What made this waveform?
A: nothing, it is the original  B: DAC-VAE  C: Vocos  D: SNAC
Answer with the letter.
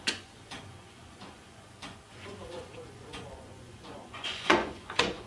C